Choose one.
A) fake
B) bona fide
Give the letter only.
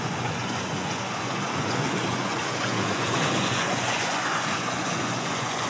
A